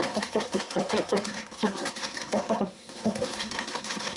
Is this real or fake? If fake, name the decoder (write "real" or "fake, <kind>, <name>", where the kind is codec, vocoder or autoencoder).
fake, codec, SNAC